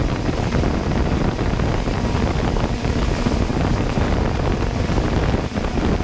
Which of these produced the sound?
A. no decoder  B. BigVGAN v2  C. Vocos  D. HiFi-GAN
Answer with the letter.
B